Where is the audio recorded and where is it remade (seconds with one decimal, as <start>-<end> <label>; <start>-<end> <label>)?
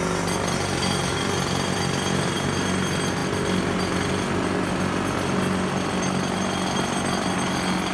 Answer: 0.0-7.9 recorded